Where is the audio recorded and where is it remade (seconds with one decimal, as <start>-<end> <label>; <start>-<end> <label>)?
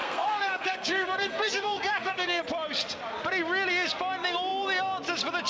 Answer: 0.0-2.4 remade; 2.4-5.5 recorded